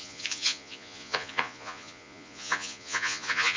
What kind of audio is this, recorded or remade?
remade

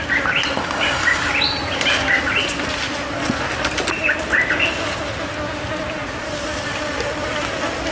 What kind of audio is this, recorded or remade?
recorded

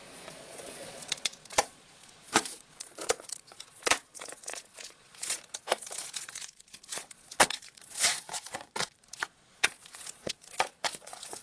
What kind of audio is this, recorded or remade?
remade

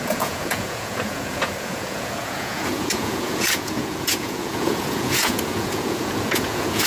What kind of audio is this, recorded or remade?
remade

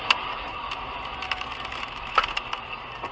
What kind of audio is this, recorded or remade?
recorded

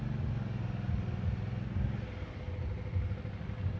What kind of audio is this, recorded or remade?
recorded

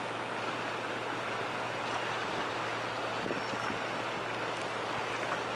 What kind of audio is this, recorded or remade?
recorded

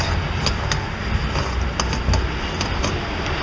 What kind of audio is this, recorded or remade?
recorded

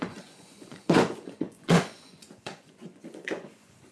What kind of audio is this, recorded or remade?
remade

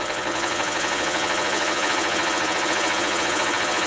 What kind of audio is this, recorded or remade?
remade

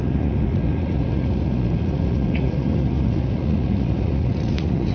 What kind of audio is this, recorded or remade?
remade